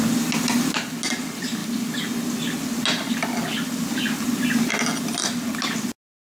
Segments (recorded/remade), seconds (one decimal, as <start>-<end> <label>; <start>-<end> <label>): 0.0-6.4 recorded